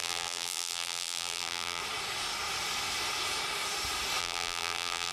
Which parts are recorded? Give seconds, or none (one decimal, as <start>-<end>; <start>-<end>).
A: 1.8-4.2